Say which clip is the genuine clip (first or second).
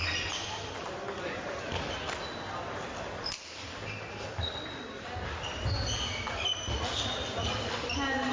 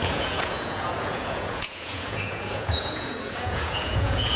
first